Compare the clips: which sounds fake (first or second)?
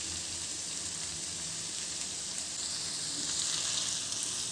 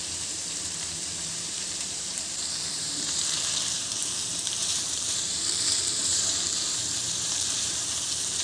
second